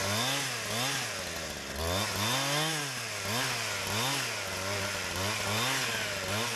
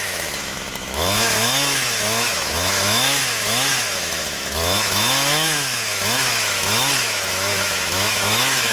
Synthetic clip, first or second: second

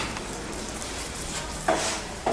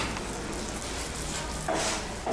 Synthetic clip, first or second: first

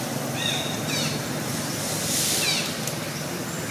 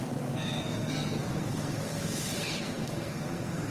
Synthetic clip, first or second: second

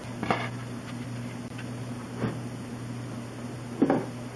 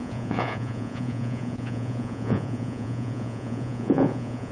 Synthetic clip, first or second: second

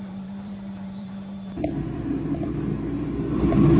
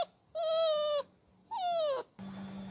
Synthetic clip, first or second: first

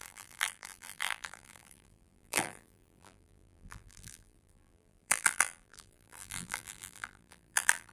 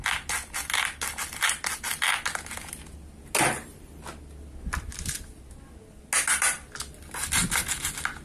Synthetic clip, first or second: first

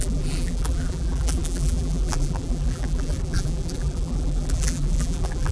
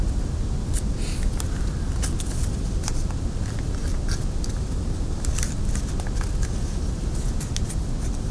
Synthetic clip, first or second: first